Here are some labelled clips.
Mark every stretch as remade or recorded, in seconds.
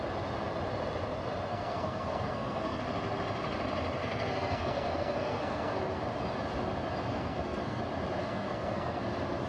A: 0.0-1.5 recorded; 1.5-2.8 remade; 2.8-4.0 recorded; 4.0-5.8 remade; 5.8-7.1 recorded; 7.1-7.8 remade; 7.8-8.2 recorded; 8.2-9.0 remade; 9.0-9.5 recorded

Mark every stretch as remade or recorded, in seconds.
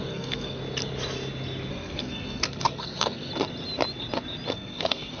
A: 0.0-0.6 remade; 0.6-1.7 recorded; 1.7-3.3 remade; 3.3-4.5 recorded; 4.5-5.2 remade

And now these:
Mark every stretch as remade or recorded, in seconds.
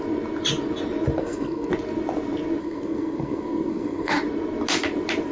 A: 0.0-1.2 recorded; 1.2-1.7 remade; 1.7-2.6 recorded; 2.6-4.1 remade; 4.1-5.3 recorded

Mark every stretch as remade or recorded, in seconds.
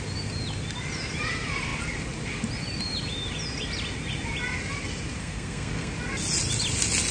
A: 0.0-5.2 recorded; 5.2-5.9 remade; 5.9-7.1 recorded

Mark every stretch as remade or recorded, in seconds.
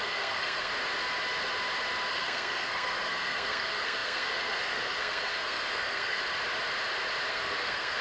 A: 0.0-0.7 remade; 0.7-2.1 recorded; 2.1-6.2 remade; 6.2-7.3 recorded; 7.3-8.0 remade